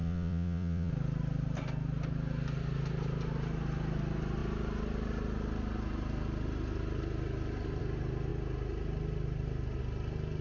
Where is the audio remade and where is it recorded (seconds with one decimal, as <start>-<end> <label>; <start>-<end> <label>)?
0.0-0.9 remade; 0.9-10.4 recorded